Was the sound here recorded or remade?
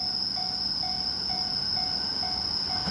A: recorded